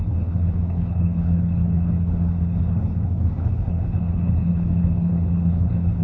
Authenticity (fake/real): fake